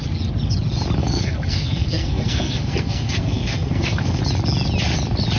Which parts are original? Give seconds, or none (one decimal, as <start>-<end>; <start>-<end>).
0.0-1.0; 4.2-5.4

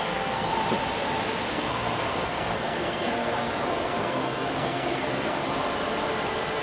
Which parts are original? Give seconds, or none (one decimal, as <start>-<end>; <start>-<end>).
0.5-1.5; 5.4-6.6

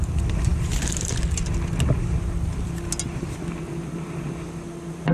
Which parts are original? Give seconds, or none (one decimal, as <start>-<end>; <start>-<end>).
0.0-5.1

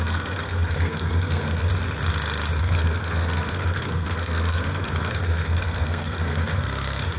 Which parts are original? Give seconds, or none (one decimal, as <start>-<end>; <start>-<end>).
1.7-2.6

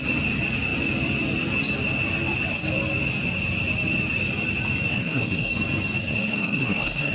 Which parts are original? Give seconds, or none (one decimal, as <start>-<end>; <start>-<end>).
0.0-4.9; 5.5-6.0

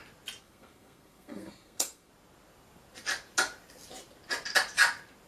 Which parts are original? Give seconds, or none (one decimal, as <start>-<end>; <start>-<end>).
0.0-0.4; 2.1-5.3